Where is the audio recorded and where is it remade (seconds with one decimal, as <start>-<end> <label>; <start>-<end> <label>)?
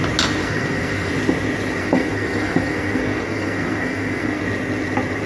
0.0-0.4 recorded; 0.4-1.1 remade; 1.1-1.8 recorded; 1.8-4.4 remade; 4.4-5.3 recorded